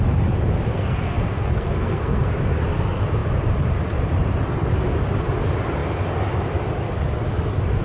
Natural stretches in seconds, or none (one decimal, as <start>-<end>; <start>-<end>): 0.0-0.7; 2.3-7.8

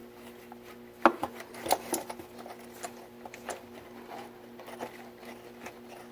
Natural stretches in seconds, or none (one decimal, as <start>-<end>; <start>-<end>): 0.0-6.1